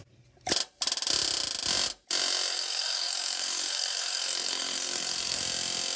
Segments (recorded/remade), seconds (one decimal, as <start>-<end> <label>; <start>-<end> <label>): 0.0-2.5 recorded; 2.5-5.4 remade; 5.4-6.0 recorded